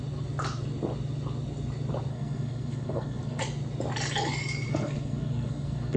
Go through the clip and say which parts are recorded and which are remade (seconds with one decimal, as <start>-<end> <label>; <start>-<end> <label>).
0.0-2.1 recorded; 2.1-3.4 remade; 3.4-4.7 recorded; 4.7-6.0 remade